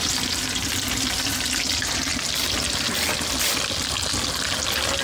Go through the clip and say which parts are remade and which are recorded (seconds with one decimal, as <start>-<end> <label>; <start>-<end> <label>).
0.0-5.0 recorded